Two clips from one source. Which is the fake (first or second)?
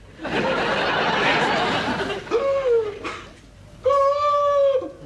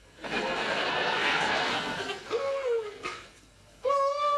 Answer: second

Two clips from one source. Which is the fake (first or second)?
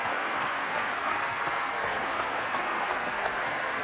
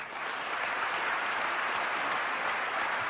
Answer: first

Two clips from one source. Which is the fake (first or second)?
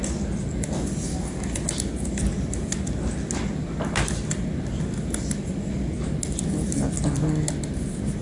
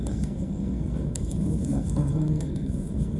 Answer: second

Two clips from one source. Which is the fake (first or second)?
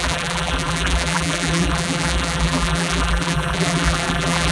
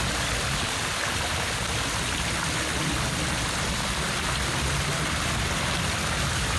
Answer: first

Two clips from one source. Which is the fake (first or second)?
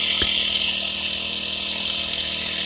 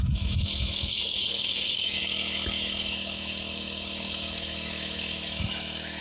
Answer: second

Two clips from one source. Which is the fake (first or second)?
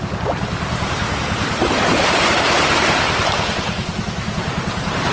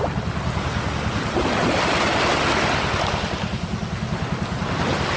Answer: first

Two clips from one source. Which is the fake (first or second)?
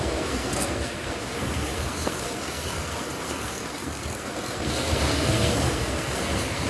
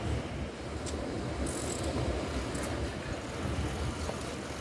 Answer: first